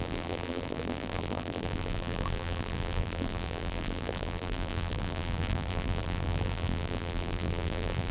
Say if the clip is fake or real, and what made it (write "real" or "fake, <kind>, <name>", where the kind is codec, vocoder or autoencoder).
fake, vocoder, BigVGAN v2